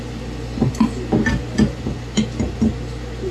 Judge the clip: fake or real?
real